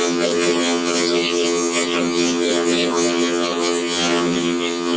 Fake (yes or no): yes